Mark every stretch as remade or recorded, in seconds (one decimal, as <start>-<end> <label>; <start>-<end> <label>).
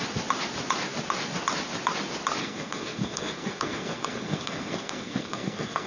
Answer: 0.0-2.4 recorded; 2.4-5.9 remade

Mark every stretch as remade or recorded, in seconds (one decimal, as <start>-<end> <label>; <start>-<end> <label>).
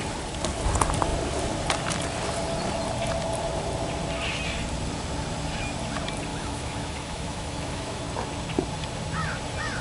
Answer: 0.0-6.3 recorded; 6.3-8.0 remade; 8.0-9.8 recorded